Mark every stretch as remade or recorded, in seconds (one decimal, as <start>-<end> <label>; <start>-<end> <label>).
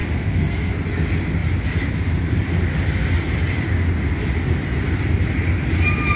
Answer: 0.0-0.7 remade; 0.7-6.2 recorded